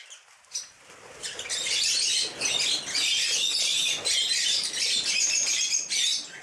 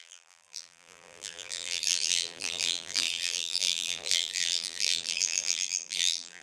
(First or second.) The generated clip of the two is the second